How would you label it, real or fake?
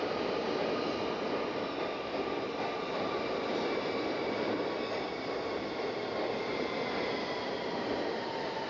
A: real